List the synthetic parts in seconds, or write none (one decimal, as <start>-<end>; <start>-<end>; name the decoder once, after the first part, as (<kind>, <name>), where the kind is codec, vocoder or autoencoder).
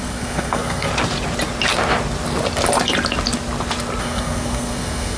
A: 0.0-0.9 (codec, SNAC); 4.0-5.2